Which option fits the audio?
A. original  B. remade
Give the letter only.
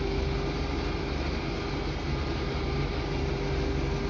A